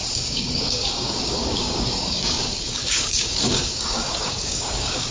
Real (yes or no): no